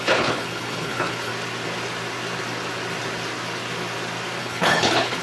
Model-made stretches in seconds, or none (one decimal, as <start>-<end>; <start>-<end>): 0.0-1.3; 4.4-5.2